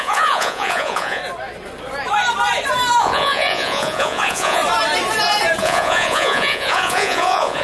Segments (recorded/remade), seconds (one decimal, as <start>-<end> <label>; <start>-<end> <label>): 0.0-1.2 remade; 1.2-3.0 recorded; 3.0-4.6 remade; 4.6-5.6 recorded; 5.6-7.6 remade